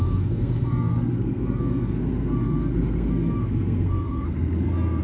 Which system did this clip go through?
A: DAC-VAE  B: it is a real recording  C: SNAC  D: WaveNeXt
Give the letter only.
C